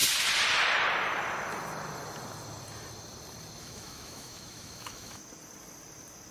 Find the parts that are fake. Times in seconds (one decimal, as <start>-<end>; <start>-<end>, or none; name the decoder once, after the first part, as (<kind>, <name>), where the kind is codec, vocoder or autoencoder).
3.6-5.2 (autoencoder, DAC-VAE)